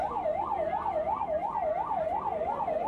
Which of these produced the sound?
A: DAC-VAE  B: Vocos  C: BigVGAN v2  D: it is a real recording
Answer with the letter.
D